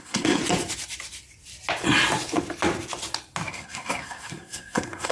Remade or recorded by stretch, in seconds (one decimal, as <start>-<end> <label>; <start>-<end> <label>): 0.0-0.4 remade; 0.4-3.5 recorded; 3.5-5.1 remade